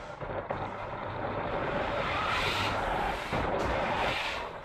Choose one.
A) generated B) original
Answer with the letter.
A